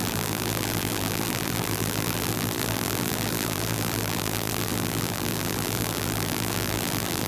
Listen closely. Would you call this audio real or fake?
fake